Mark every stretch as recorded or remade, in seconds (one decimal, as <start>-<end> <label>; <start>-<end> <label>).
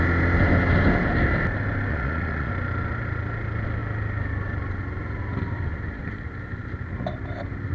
0.0-1.9 recorded; 1.9-2.5 remade; 2.5-7.7 recorded